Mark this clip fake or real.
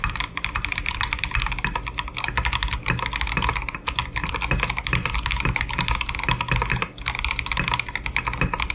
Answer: real